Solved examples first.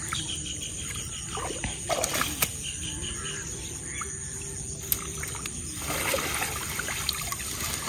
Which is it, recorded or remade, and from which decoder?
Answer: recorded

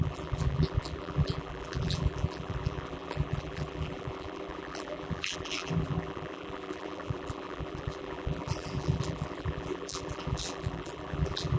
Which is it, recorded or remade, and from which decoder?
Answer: remade, vocoder, BigVGAN v2